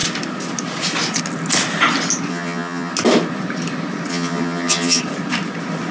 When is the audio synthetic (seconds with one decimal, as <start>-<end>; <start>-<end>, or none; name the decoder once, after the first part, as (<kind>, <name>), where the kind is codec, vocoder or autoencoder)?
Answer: 2.3-2.9 (vocoder, HiFi-GAN); 4.1-5.0